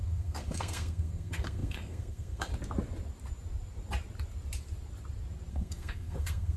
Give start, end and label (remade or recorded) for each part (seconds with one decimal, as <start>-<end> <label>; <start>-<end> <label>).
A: 0.0-2.5 remade; 2.5-5.5 recorded; 5.5-6.6 remade